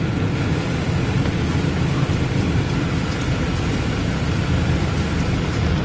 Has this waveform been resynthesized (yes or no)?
yes